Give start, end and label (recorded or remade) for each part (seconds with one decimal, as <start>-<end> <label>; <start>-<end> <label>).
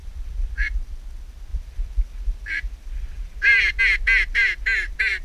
0.0-0.5 remade; 0.5-1.5 recorded; 1.5-3.8 remade; 3.8-5.2 recorded